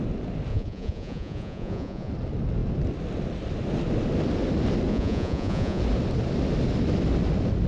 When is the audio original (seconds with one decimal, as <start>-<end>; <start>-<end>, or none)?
0.0-0.5; 2.1-4.9; 5.8-7.7